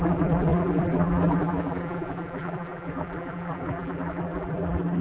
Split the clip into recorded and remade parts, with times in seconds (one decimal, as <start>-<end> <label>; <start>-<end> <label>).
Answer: 0.0-5.0 remade